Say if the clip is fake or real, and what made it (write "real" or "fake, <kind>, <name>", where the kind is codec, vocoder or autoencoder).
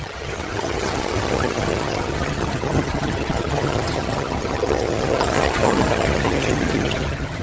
fake, vocoder, HiFi-GAN